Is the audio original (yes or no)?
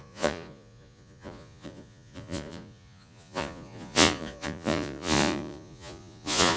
no